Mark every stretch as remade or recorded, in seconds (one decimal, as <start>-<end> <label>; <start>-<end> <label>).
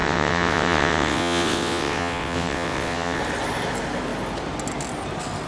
0.0-3.2 remade; 3.2-5.5 recorded